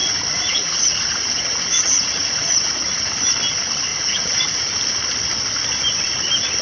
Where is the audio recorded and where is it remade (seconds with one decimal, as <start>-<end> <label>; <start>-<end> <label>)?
0.0-3.1 remade; 3.1-3.9 recorded; 3.9-4.7 remade; 4.7-6.6 recorded

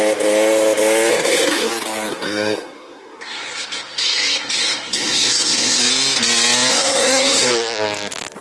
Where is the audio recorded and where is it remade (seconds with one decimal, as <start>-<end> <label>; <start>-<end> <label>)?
0.0-1.1 recorded; 1.1-1.7 remade; 1.7-2.1 recorded; 2.1-5.8 remade; 5.8-6.7 recorded; 6.7-7.5 remade; 7.5-8.4 recorded

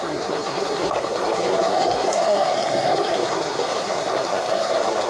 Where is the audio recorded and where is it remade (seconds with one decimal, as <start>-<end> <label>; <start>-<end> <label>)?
0.0-5.1 remade